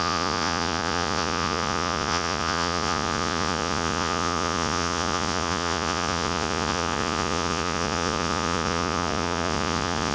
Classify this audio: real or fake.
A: fake